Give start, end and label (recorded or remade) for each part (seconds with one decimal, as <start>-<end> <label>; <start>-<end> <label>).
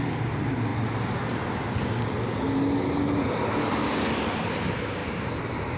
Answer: 0.0-5.8 recorded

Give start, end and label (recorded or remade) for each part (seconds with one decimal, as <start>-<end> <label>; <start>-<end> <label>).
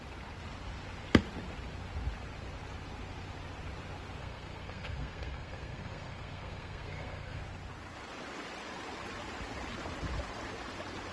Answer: 0.0-4.2 recorded; 4.2-7.4 remade; 7.4-11.1 recorded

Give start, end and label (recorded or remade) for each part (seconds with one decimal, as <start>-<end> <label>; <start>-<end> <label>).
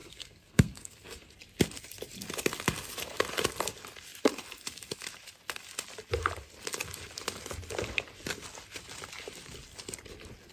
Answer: 0.0-1.3 remade; 1.3-10.5 recorded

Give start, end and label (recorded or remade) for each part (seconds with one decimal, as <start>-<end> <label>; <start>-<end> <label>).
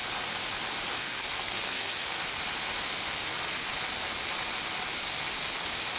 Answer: 0.0-1.0 recorded; 1.0-2.2 remade; 2.2-6.0 recorded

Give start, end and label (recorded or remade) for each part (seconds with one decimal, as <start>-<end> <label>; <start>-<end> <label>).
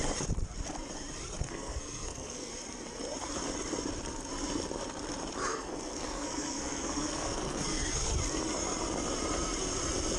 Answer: 0.0-1.4 recorded; 1.4-2.5 remade; 2.5-5.5 recorded; 5.5-8.1 remade; 8.1-10.2 recorded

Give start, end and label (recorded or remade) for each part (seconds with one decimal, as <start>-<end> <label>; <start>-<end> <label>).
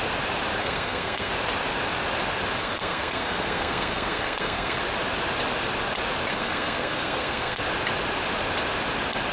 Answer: 0.0-0.6 recorded; 0.6-1.3 remade; 1.3-2.6 recorded; 2.6-4.8 remade; 4.8-6.3 recorded; 6.3-7.6 remade; 7.6-9.3 recorded